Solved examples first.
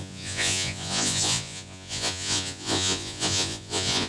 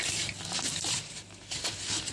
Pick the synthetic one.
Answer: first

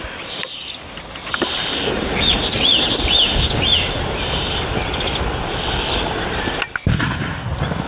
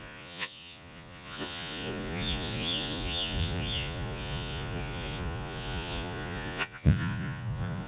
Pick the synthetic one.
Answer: second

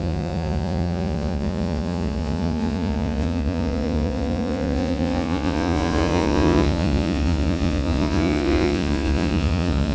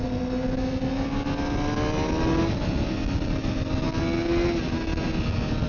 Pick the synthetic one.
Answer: first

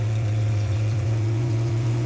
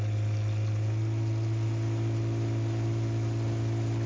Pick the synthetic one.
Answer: first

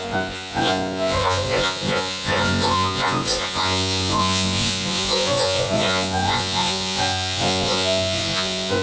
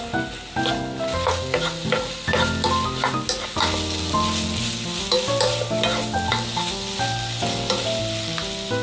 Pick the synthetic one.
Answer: first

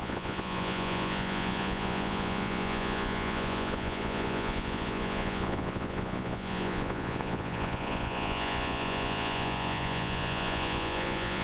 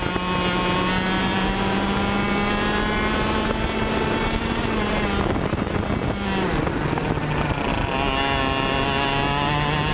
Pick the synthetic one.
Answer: first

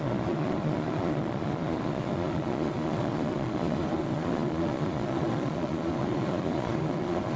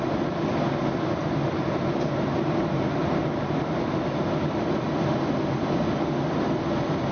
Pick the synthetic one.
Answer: first